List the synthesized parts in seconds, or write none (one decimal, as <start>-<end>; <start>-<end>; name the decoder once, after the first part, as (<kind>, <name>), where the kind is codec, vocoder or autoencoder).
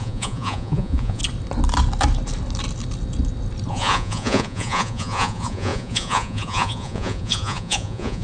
0.0-1.2 (vocoder, Vocos); 3.7-8.2